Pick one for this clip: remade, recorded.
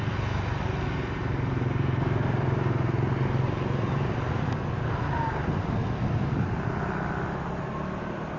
recorded